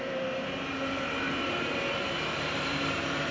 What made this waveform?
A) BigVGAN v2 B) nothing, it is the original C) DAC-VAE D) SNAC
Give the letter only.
A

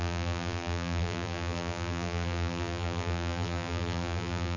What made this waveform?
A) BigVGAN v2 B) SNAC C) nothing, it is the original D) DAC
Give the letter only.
A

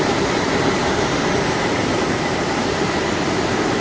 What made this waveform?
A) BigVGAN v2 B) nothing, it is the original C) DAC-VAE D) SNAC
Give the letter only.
A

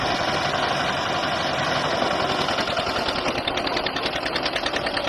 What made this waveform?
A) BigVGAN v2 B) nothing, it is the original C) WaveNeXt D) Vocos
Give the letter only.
B